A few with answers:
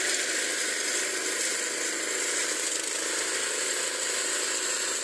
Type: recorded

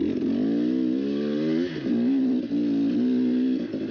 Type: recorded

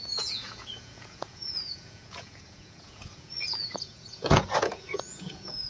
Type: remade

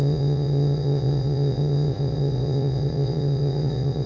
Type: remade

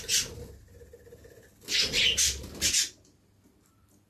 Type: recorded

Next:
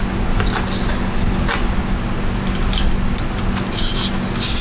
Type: recorded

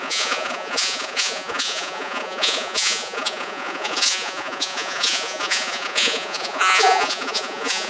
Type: remade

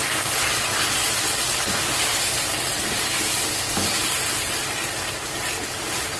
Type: recorded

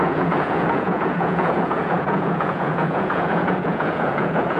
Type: remade